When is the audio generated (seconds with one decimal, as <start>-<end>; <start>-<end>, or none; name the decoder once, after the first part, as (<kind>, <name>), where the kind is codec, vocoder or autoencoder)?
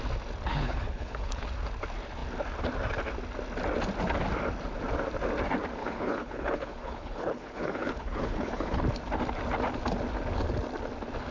0.5-1.4 (codec, HILCodec); 5.8-8.8